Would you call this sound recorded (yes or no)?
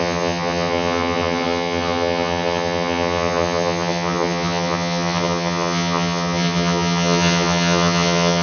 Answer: no